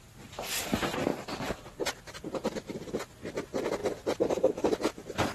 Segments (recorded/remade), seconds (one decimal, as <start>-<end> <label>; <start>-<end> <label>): 0.0-3.8 recorded; 3.8-4.7 remade; 4.7-5.3 recorded